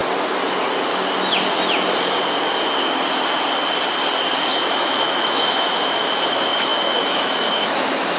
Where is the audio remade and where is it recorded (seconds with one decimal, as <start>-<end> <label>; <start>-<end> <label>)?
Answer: 0.0-4.5 recorded; 4.5-8.2 remade